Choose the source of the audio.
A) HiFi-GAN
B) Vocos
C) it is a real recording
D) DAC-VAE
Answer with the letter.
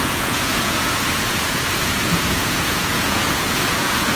B